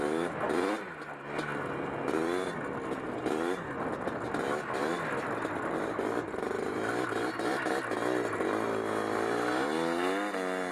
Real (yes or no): yes